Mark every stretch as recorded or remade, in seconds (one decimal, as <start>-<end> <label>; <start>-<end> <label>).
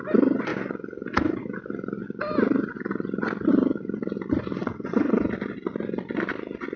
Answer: 0.0-4.6 recorded; 4.6-5.2 remade; 5.2-6.8 recorded